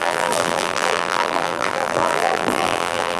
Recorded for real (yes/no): no